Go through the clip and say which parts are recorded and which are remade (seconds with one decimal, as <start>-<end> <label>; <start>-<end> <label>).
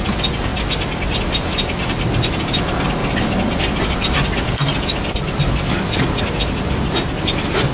0.0-7.7 recorded